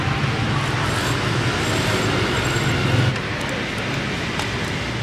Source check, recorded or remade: recorded